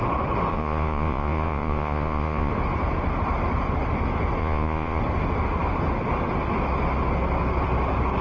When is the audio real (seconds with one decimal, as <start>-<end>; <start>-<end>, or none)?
0.0-0.5; 2.5-4.4; 5.0-8.2